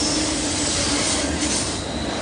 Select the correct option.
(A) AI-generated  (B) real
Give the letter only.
B